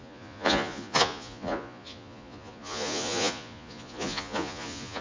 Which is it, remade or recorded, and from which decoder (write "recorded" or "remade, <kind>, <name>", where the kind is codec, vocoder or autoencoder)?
remade, vocoder, Vocos